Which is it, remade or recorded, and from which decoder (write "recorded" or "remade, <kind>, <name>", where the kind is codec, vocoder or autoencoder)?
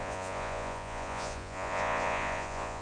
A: remade, vocoder, Vocos